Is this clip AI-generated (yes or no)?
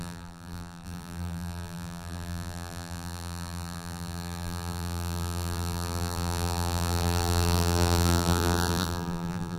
yes